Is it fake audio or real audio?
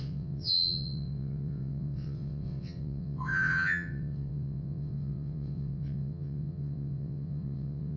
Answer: fake